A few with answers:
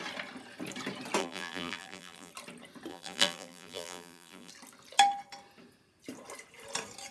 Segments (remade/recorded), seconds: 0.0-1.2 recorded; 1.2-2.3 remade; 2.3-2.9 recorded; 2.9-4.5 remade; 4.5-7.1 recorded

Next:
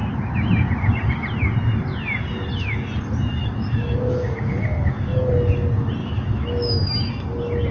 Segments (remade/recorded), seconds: 0.0-3.4 recorded; 3.4-5.3 remade; 5.3-6.0 recorded; 6.0-7.1 remade; 7.1-7.7 recorded

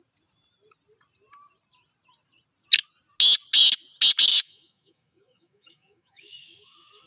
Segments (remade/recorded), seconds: 0.0-4.3 recorded; 4.3-7.1 remade

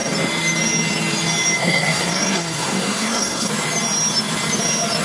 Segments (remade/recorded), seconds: 0.0-1.6 recorded; 1.6-3.5 remade; 3.5-5.0 recorded

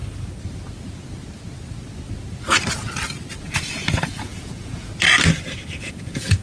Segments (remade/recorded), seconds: 0.0-3.4 recorded; 3.4-4.9 remade; 4.9-5.8 recorded; 5.8-6.4 remade